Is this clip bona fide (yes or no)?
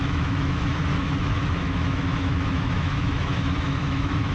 no